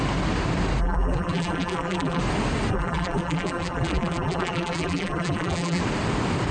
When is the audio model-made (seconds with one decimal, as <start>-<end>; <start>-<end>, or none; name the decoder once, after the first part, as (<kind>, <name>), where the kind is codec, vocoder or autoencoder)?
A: 0.8-2.2 (vocoder, BigVGAN v2); 2.7-5.8